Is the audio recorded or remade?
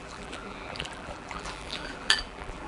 remade